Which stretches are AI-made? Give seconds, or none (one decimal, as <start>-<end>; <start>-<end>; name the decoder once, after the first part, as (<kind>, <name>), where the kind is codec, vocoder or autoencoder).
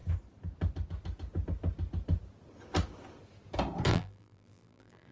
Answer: 3.9-5.1 (vocoder, BigVGAN v2)